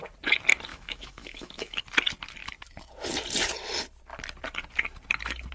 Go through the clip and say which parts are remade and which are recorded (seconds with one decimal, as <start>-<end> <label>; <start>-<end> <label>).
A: 0.0-0.7 recorded; 0.7-1.8 remade; 1.8-5.5 recorded